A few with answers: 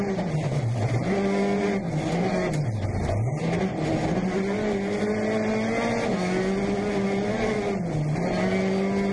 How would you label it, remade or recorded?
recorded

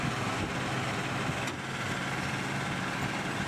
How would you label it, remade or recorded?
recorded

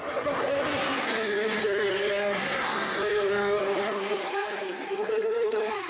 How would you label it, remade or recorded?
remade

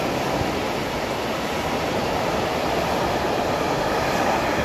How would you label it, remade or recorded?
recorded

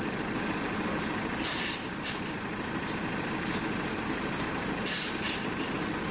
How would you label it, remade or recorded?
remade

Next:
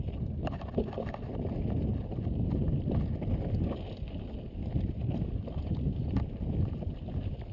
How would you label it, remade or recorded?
recorded